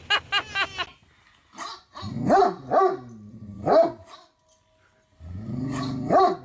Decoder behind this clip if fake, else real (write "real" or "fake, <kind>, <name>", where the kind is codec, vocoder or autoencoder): real